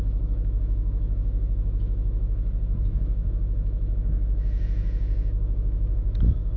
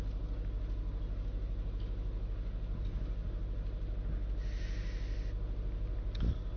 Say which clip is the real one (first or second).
second